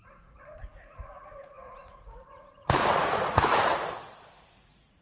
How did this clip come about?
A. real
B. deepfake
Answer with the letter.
B